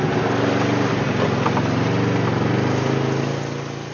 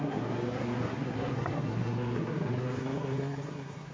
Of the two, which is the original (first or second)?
first